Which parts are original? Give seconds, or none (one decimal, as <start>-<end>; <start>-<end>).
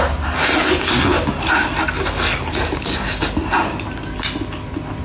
0.0-5.0